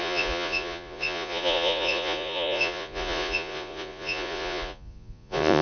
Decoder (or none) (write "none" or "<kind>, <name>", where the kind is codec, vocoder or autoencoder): vocoder, Vocos